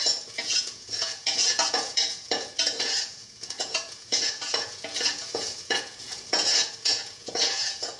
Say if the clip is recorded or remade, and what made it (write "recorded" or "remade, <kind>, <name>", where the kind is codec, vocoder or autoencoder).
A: remade, vocoder, Vocos